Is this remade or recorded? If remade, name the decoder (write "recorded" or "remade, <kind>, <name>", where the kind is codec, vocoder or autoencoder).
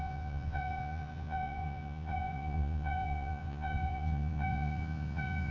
remade, vocoder, Vocos